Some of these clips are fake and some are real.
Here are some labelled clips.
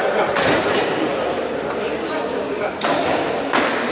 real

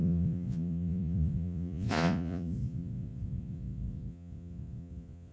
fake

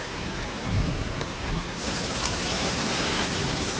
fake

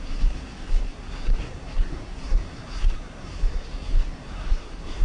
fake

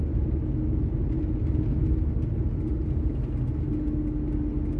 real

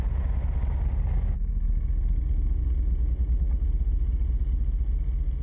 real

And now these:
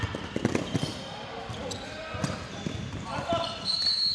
real